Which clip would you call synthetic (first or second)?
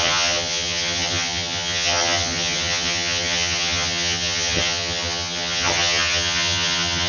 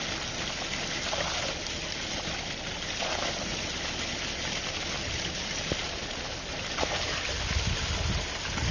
first